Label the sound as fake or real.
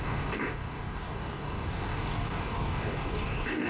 fake